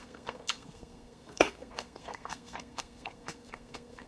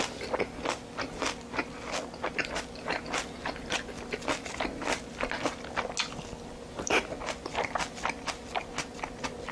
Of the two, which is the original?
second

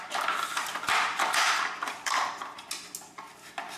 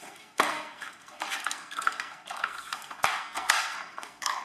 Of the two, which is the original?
first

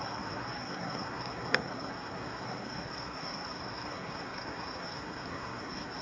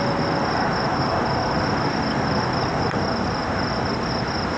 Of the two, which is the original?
second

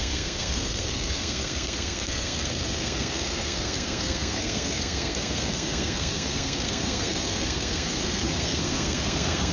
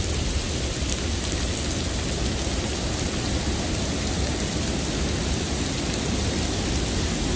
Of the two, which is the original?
second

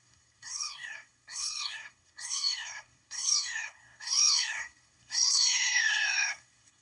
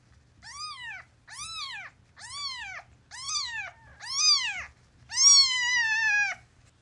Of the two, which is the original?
second